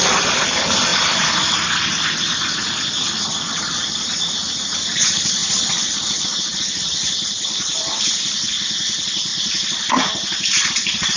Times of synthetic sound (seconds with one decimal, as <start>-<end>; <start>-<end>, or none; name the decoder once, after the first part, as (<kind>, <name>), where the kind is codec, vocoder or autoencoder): 0.0-0.9 (vocoder, BigVGAN v2); 3.2-5.4; 6.6-9.3; 10.7-11.2